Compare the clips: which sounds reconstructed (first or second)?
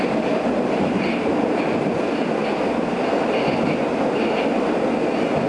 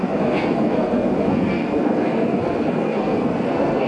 second